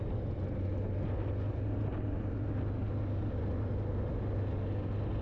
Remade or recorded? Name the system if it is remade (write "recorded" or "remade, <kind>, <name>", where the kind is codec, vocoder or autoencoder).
recorded